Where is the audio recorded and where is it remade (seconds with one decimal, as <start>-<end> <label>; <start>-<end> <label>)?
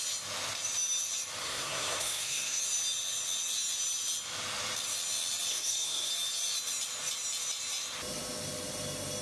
0.0-1.4 recorded; 1.4-2.6 remade; 2.6-5.5 recorded; 5.5-6.1 remade; 6.1-9.2 recorded